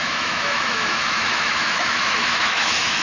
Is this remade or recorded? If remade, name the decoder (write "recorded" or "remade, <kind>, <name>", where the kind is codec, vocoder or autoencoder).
remade, autoencoder, DAC-VAE